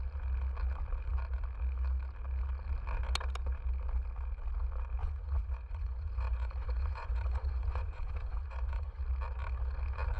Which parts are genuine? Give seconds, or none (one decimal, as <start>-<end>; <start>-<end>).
0.0-5.0; 9.0-10.2